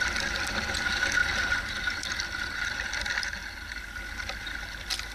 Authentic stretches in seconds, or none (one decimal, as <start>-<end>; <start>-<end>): 0.0-5.1